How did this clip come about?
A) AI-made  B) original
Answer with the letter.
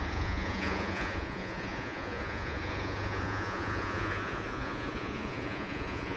A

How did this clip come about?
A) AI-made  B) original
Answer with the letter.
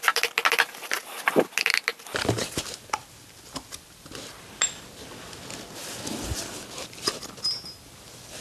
B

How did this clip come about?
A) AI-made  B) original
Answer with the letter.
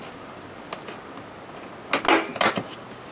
B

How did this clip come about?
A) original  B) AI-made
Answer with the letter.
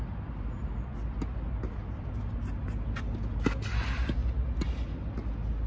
A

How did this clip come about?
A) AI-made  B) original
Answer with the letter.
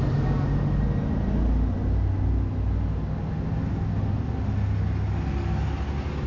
B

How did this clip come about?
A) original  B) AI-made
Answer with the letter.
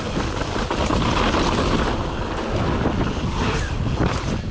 A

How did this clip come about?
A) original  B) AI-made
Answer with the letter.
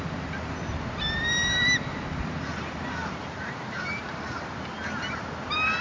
B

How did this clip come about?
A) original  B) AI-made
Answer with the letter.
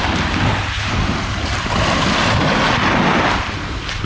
A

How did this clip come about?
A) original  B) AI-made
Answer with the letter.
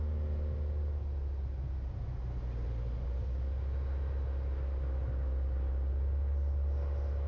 A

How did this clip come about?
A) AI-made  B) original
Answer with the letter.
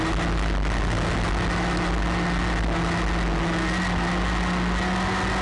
B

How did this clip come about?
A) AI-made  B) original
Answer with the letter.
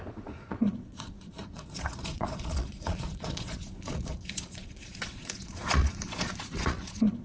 A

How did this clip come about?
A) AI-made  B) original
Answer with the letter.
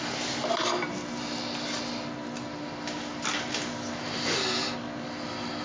B